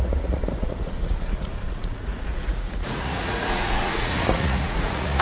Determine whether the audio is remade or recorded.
remade